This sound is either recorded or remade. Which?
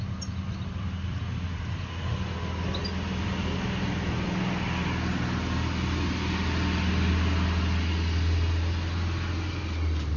recorded